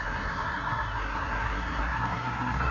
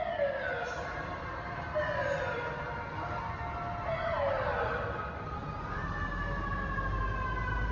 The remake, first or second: first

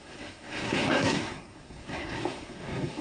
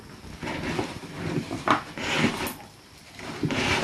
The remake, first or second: first